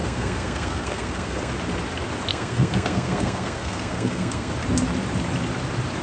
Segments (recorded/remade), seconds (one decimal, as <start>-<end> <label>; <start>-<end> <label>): 0.0-1.5 remade; 1.5-2.3 recorded; 2.3-4.5 remade; 4.5-6.0 recorded

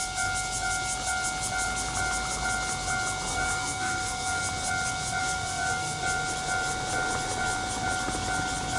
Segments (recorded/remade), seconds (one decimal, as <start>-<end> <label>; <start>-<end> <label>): 0.0-3.3 recorded; 3.3-4.4 remade; 4.4-5.2 recorded; 5.2-6.0 remade; 6.0-8.8 recorded

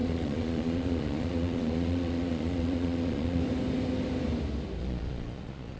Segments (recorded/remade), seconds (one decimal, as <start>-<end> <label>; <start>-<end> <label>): 0.0-3.4 remade; 3.4-4.8 recorded; 4.8-5.8 remade

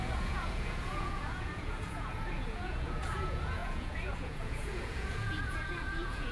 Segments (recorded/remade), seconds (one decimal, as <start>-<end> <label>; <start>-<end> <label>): 0.0-6.3 remade

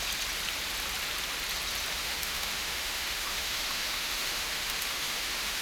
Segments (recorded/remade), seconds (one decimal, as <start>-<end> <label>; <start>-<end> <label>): 0.0-1.9 recorded; 1.9-5.6 remade

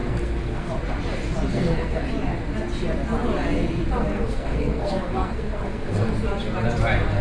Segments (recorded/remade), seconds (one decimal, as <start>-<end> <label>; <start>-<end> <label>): 0.0-0.7 remade; 0.7-1.5 recorded; 1.5-2.0 remade; 2.0-4.0 recorded; 4.0-6.1 remade; 6.1-7.2 recorded

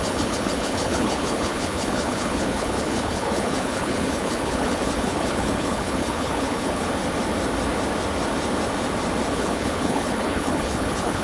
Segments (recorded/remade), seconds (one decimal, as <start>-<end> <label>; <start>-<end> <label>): 0.0-6.9 remade; 6.9-9.3 recorded; 9.3-11.2 remade